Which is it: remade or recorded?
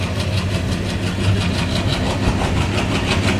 recorded